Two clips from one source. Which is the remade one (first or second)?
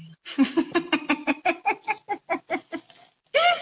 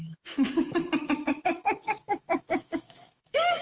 second